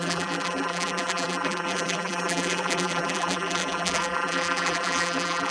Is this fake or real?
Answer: fake